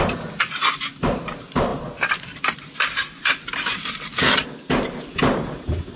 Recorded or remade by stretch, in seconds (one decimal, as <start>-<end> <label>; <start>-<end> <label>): 0.0-6.0 recorded